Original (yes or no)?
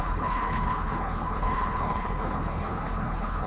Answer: no